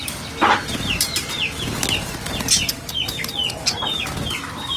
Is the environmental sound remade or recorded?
recorded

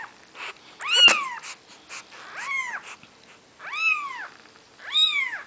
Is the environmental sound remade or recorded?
recorded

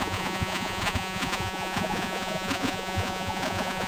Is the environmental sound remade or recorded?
remade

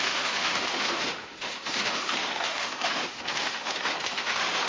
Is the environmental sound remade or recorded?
remade